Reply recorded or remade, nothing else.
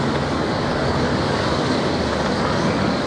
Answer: remade